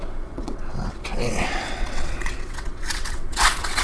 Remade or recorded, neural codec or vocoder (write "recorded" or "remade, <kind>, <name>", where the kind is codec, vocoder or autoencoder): remade, vocoder, WaveNeXt